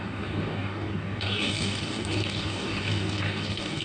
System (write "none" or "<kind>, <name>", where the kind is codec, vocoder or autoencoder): codec, DAC